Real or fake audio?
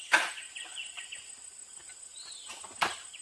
real